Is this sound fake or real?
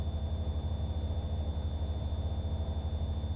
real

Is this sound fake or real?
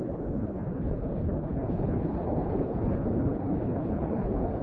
fake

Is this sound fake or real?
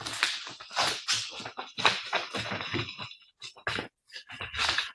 real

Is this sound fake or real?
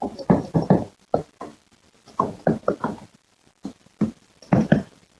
real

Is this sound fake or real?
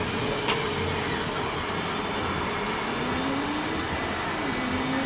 real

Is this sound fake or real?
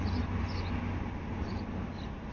real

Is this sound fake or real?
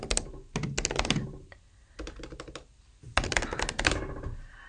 real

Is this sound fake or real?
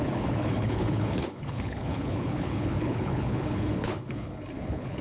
fake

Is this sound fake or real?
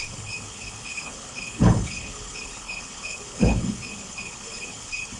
fake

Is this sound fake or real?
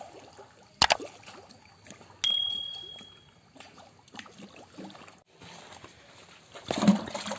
real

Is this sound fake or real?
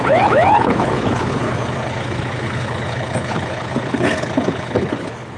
fake